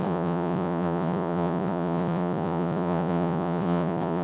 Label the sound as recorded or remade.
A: remade